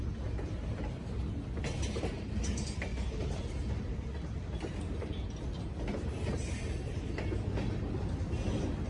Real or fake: real